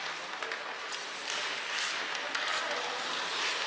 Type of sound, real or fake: real